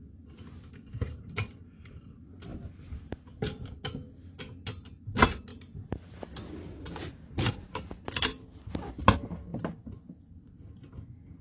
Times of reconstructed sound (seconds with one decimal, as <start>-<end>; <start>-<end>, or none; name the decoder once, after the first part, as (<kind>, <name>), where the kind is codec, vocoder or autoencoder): none